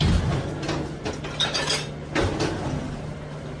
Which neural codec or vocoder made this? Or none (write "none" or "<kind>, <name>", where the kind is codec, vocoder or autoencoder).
none